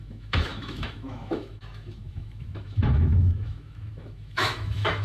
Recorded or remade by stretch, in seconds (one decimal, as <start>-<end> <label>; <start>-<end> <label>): 0.0-5.0 remade